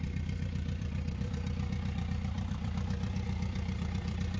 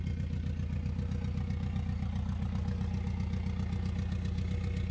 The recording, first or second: second